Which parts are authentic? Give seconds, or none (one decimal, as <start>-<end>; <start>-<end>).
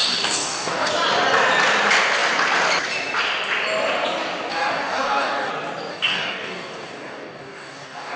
0.9-4.5; 5.5-5.9